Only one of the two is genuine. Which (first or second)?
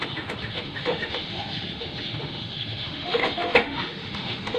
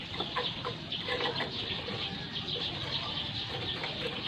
second